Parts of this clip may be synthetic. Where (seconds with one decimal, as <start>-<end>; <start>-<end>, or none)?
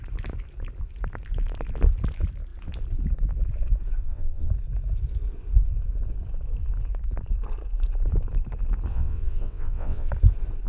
4.0-4.5; 8.9-10.1